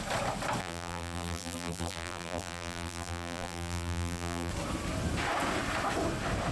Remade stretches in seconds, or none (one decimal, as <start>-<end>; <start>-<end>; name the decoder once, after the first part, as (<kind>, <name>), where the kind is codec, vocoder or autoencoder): 0.6-4.5 (vocoder, BigVGAN v2)